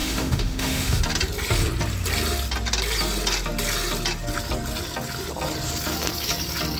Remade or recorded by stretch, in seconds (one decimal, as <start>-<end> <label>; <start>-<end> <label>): 0.0-1.0 remade; 1.0-6.8 recorded